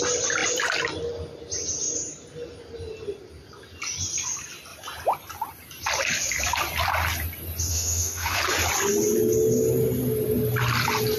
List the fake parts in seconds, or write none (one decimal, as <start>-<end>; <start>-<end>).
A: 7.7-8.4

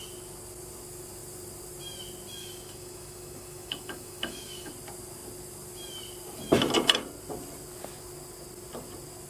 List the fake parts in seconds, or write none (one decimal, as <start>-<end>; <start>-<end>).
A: 2.4-4.7

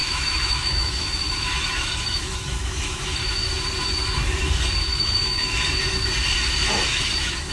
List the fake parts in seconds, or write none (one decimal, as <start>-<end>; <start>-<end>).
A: 0.0-3.5; 4.9-5.6; 6.9-7.5